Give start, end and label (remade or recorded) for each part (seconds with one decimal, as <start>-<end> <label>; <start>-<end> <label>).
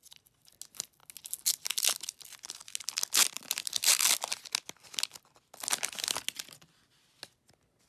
0.0-7.9 recorded